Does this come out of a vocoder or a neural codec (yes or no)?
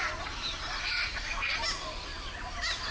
no